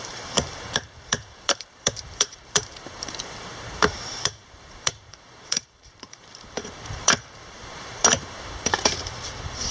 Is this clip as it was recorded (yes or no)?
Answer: no